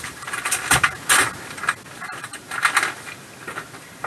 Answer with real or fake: real